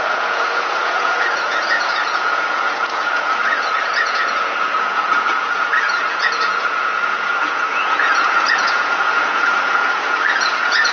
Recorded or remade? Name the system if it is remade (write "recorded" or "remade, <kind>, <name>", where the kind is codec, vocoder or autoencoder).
remade, vocoder, Vocos